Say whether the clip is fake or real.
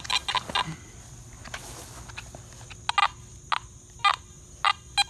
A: real